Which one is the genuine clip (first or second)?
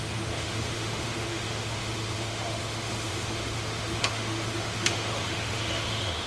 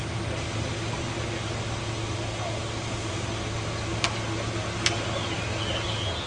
second